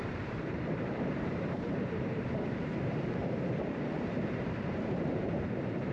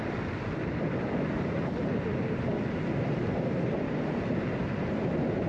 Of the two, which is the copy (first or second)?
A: first